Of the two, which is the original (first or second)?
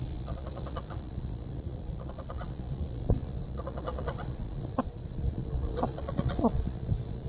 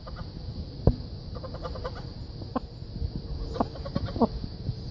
second